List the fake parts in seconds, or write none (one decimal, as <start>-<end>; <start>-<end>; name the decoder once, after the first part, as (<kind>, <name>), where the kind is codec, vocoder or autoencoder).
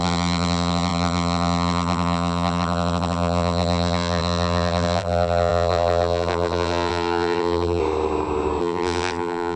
0.0-7.8 (vocoder, BigVGAN v2); 8.6-9.6